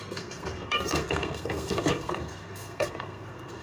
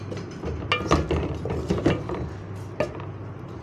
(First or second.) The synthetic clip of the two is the first